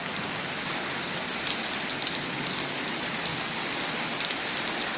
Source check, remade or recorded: recorded